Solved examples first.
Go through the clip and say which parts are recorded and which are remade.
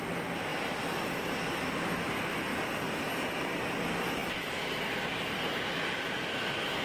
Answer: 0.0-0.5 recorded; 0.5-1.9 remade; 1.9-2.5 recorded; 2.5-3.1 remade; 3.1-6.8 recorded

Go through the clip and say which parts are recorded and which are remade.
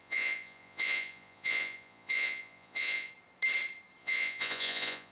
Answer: 0.0-3.1 remade; 3.1-4.0 recorded; 4.0-5.1 remade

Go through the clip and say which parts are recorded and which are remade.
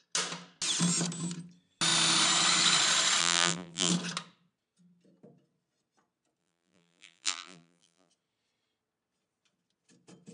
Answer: 0.0-3.2 recorded; 3.2-3.9 remade; 3.9-6.4 recorded; 6.4-8.1 remade; 8.1-10.3 recorded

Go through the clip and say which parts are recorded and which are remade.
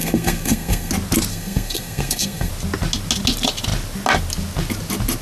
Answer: 0.0-0.9 remade; 0.9-1.3 recorded; 1.3-2.5 remade; 2.5-5.2 recorded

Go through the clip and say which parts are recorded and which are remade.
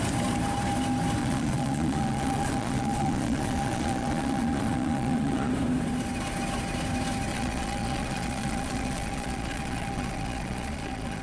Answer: 0.0-1.2 recorded; 1.2-5.5 remade; 5.5-7.3 recorded; 7.3-11.2 remade